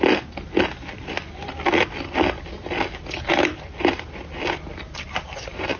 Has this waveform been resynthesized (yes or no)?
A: no